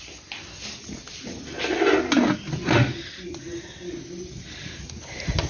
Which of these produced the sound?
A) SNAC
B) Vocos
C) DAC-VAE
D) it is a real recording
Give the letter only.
D